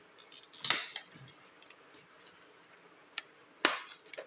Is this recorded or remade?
recorded